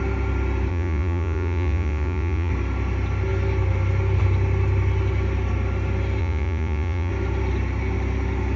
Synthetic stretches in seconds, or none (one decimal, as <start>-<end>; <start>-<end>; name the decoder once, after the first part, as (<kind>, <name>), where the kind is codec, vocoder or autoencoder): 0.7-2.5 (vocoder, Vocos); 6.2-7.1